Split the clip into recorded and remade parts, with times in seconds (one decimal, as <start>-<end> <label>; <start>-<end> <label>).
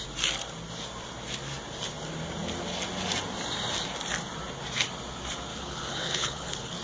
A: 0.0-5.5 recorded; 5.5-6.8 remade